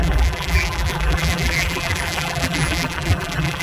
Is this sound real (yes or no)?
no